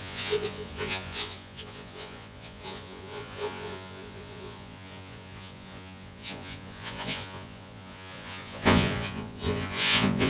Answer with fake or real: fake